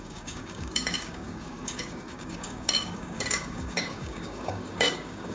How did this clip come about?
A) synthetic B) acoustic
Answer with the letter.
A